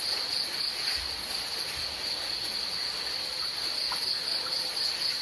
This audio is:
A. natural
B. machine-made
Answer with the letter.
A